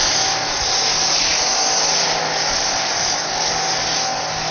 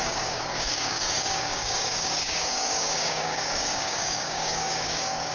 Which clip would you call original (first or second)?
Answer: first